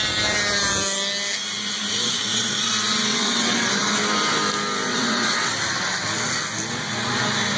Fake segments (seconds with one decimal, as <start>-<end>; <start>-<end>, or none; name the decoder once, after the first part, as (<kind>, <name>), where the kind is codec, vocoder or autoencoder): 2.0-2.7 (vocoder, WaveNeXt); 3.1-3.7; 4.9-5.5